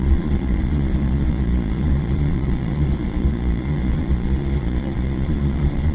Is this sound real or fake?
fake